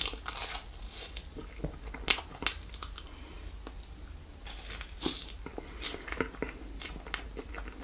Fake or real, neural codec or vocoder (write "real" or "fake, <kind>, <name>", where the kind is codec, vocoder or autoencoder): real